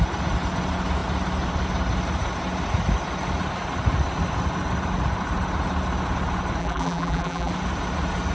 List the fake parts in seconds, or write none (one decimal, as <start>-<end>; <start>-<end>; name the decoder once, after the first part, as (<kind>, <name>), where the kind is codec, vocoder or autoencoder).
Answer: 6.6-7.5 (vocoder, BigVGAN v2)